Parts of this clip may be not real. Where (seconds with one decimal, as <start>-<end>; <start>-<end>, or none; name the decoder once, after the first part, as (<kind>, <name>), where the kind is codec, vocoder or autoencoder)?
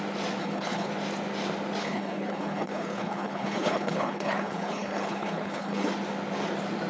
0.4-0.9 (codec, HILCodec); 1.8-5.9